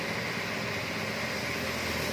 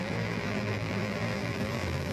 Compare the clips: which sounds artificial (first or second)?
second